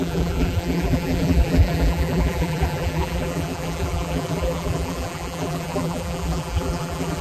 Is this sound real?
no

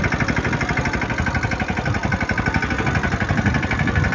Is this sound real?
yes